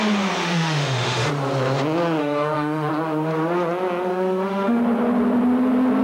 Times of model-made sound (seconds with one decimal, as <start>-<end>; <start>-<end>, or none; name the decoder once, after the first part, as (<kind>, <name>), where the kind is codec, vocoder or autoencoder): 0.4-1.3 (autoencoder, DAC-VAE); 2.2-2.9; 4.1-4.8